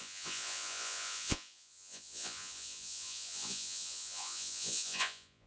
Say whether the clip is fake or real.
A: fake